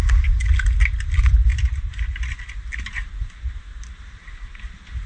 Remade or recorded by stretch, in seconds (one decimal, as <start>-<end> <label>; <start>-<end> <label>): 0.0-5.1 recorded